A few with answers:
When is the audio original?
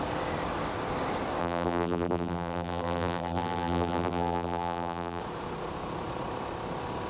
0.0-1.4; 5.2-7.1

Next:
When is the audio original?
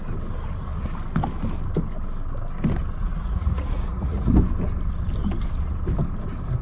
0.0-3.0; 4.3-6.6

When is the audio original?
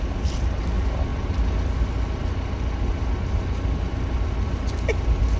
0.0-5.4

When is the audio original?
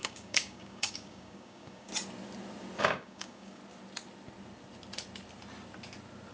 1.9-2.8; 3.6-6.3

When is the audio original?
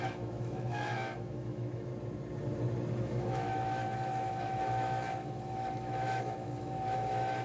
1.9-2.9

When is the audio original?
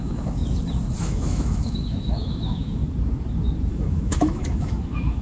0.4-1.0; 2.8-3.7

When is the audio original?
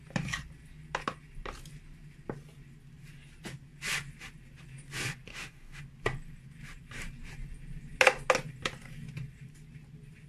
0.0-5.3; 5.8-10.3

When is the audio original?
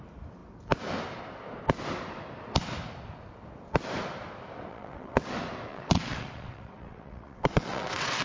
0.0-4.7; 5.3-5.7